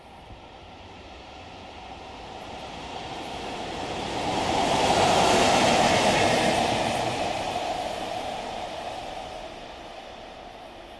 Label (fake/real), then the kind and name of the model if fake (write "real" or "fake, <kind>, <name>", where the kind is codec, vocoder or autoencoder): fake, vocoder, BigVGAN v2